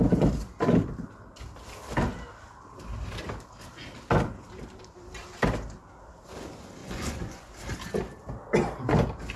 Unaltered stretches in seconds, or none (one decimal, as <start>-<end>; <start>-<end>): 0.0-6.8; 7.5-9.4